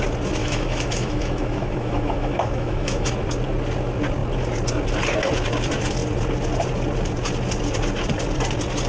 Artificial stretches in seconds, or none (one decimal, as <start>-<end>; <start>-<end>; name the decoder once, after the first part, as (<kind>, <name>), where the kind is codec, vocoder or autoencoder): 0.4-3.1 (autoencoder, DAC-VAE)